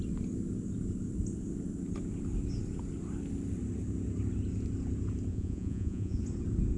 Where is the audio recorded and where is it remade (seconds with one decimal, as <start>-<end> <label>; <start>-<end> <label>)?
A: 0.0-5.3 recorded; 5.3-6.2 remade; 6.2-6.8 recorded